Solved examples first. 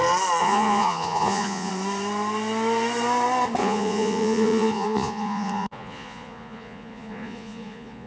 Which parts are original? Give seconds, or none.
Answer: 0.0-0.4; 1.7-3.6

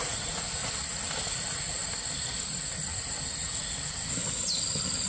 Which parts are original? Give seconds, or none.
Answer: 0.6-1.3; 1.8-5.1

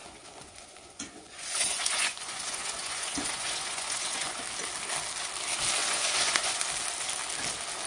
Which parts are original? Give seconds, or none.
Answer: 4.4-5.8; 6.6-7.9

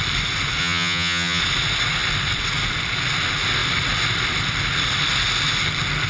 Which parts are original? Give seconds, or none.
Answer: 0.0-0.6; 1.4-6.1

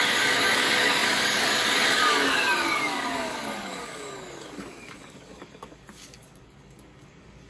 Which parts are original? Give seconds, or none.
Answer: none